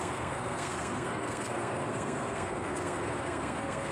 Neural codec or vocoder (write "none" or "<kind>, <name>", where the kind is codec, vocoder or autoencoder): codec, SNAC